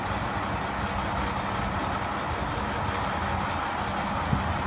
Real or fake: real